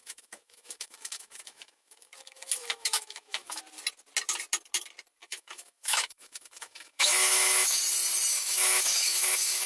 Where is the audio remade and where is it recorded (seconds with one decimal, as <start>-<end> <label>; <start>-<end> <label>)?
0.0-3.6 remade; 3.6-5.2 recorded; 5.2-7.8 remade; 7.8-8.3 recorded; 8.3-9.7 remade